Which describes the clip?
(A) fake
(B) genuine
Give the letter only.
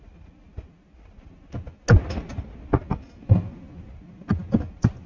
B